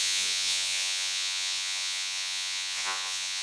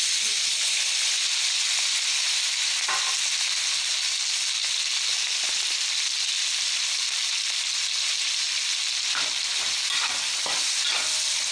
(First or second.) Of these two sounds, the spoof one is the first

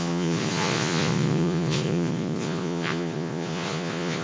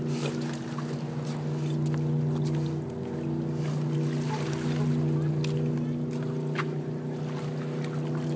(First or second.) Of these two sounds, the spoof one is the first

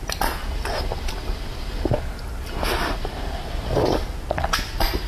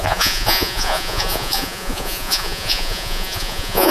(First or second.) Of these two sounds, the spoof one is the second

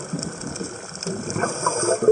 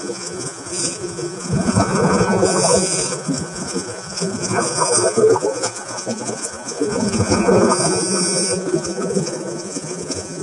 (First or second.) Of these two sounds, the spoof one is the second